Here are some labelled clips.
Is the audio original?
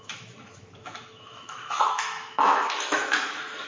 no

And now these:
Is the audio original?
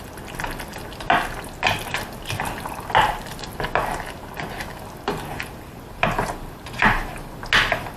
yes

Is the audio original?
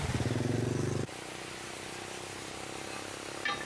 yes